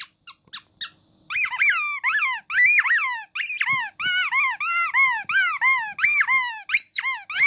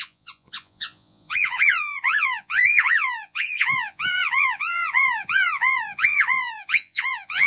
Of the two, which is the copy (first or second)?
second